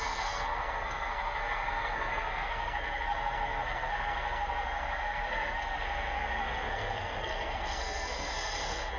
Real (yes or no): no